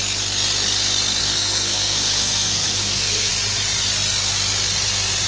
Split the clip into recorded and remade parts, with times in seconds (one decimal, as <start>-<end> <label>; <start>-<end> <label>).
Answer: 0.0-1.2 recorded; 1.2-3.3 remade; 3.3-5.3 recorded